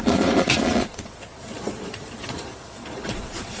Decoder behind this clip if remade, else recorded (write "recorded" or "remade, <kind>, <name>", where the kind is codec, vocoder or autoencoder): remade, vocoder, Vocos